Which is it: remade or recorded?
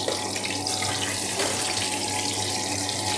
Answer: recorded